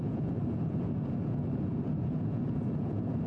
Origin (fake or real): fake